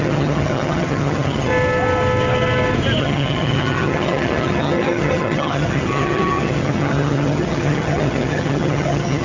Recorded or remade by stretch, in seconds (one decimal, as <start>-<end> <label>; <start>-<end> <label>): 0.0-1.5 remade; 1.5-3.0 recorded; 3.0-9.2 remade